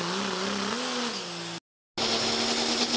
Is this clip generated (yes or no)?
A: no